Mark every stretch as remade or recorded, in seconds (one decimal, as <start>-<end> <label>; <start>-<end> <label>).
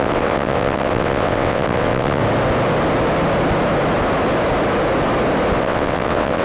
0.0-2.2 remade; 2.2-5.6 recorded; 5.6-6.4 remade